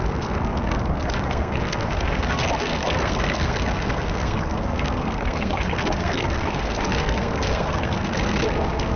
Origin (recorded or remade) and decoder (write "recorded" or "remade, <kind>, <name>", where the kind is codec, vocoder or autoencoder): remade, codec, SNAC